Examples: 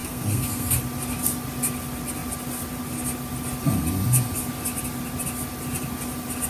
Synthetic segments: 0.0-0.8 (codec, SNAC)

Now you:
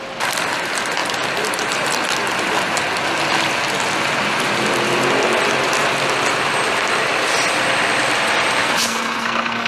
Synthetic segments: 8.6-9.7 (codec, SNAC)

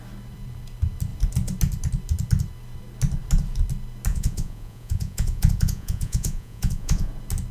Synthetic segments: 4.1-7.1 (vocoder, Vocos)